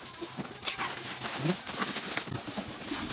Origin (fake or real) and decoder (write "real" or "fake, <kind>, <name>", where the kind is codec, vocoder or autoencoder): real